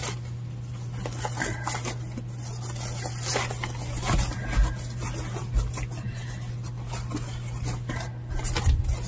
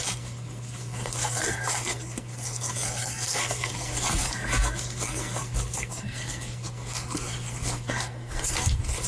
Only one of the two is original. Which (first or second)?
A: first